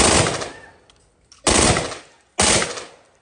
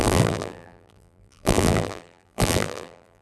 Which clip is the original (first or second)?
first